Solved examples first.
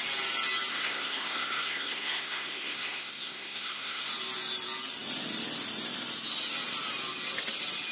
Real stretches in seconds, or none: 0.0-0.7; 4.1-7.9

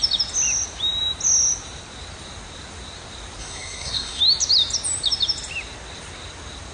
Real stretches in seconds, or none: 0.0-3.4; 4.2-6.7

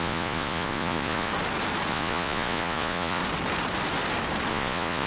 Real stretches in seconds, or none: 1.3-1.9; 3.2-4.5

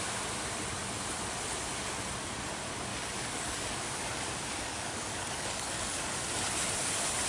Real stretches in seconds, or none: 0.0-2.9; 6.1-7.3

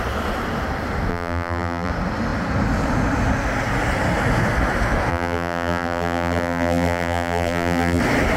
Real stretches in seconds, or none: 0.0-1.1; 1.9-5.1; 8.0-8.4